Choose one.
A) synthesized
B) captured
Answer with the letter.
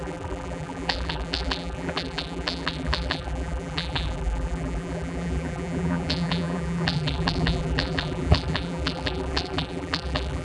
A